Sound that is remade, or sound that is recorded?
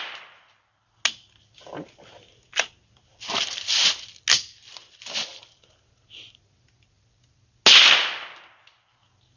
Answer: recorded